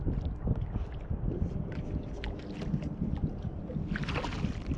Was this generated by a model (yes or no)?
no